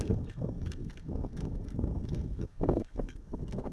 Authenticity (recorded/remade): remade